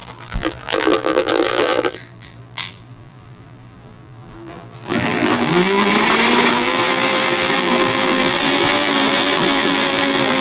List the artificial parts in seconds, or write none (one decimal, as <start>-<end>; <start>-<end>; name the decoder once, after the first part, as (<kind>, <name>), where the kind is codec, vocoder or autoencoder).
0.0-5.9 (vocoder, BigVGAN v2); 6.5-10.4